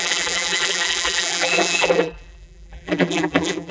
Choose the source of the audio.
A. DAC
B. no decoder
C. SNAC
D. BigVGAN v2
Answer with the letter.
D